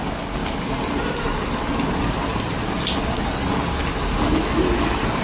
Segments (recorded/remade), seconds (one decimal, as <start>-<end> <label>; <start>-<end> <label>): 0.0-5.2 recorded